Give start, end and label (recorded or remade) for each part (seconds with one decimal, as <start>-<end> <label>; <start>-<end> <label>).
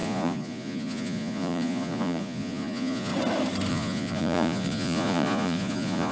0.0-3.1 remade; 3.1-3.7 recorded; 3.7-6.1 remade